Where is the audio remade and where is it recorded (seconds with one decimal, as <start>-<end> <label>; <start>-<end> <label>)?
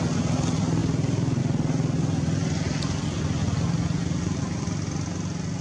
0.0-5.6 recorded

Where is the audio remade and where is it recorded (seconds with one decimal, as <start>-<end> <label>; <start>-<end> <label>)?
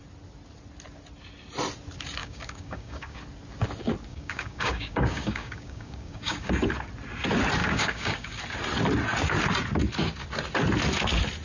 0.0-2.2 recorded; 2.2-3.2 remade; 3.2-4.1 recorded; 4.1-6.5 remade; 6.5-7.6 recorded; 7.6-8.4 remade; 8.4-11.4 recorded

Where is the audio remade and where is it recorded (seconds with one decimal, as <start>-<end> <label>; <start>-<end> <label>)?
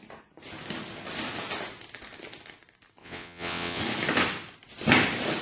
0.0-3.0 recorded; 3.0-3.8 remade; 3.8-5.4 recorded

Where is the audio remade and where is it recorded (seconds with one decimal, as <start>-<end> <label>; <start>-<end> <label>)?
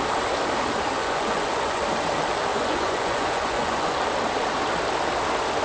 0.0-1.0 recorded; 1.0-1.8 remade; 1.8-2.5 recorded; 2.5-4.0 remade; 4.0-5.6 recorded